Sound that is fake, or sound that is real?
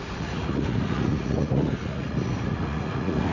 fake